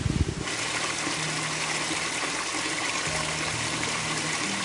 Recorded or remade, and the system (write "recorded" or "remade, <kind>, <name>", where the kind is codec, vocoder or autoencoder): recorded